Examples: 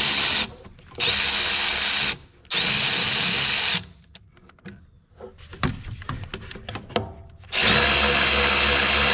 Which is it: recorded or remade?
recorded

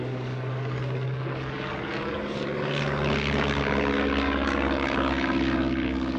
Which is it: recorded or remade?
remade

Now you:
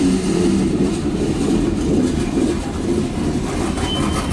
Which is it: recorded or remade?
recorded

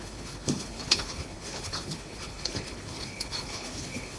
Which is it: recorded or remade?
remade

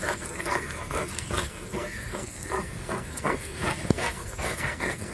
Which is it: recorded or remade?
remade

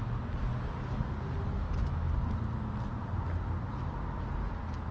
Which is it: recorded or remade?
recorded